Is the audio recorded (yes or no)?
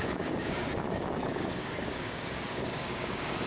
no